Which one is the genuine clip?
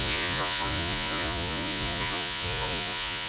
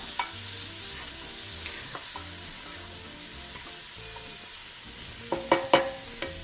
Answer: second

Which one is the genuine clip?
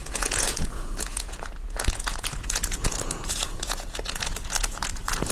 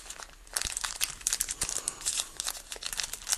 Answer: second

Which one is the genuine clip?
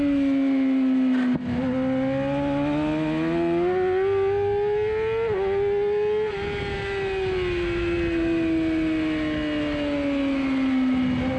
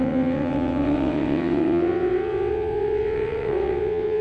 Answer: first